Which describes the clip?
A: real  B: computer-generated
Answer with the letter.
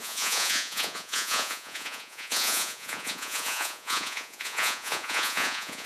B